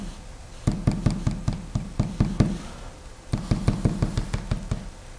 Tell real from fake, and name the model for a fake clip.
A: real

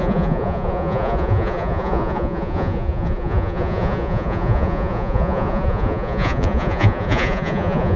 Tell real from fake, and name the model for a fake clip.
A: fake, vocoder, Vocos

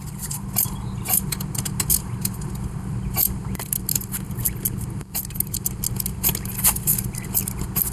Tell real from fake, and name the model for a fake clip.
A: real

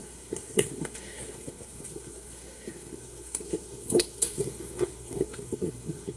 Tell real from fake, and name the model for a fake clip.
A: fake, codec, SNAC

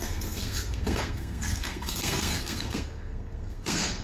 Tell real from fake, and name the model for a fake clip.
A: fake, codec, SNAC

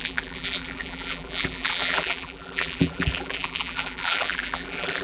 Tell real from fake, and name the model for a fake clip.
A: fake, vocoder, BigVGAN v2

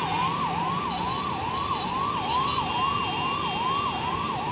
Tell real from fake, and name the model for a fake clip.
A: real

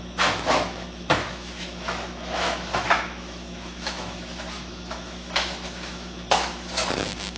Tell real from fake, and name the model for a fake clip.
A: fake, autoencoder, DAC-VAE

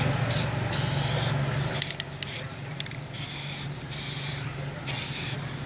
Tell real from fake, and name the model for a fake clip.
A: real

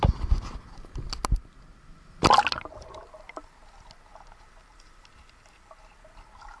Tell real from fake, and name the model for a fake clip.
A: real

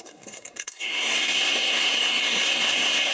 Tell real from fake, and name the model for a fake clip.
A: fake, codec, SNAC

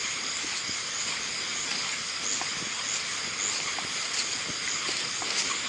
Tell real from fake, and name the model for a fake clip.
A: real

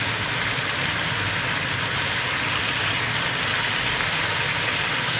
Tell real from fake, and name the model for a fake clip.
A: real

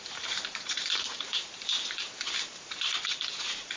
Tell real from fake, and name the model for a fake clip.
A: fake, vocoder, BigVGAN v2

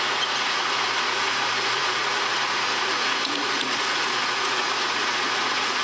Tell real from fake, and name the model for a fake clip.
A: fake, vocoder, Vocos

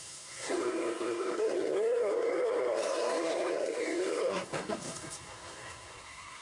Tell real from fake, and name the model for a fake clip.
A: fake, codec, SNAC